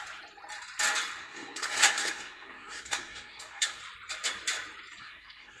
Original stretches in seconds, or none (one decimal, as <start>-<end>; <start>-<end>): 0.0-1.2; 3.8-5.0